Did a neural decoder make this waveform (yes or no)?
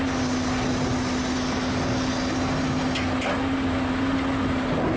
no